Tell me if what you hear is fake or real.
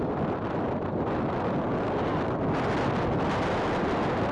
real